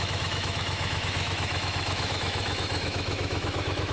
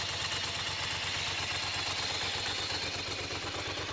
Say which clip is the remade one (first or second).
first